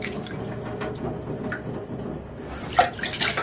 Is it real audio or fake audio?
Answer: real